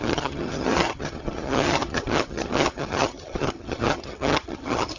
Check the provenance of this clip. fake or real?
fake